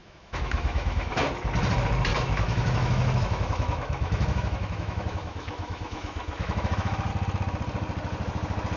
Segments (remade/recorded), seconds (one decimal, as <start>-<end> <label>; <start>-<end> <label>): 0.0-1.2 remade; 1.2-2.1 recorded; 2.1-7.1 remade; 7.1-8.8 recorded